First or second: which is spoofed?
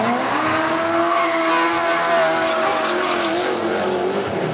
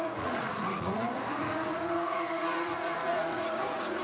second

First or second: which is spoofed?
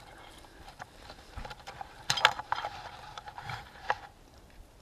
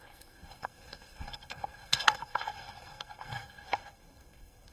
second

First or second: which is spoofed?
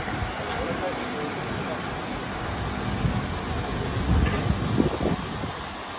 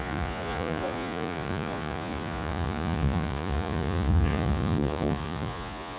second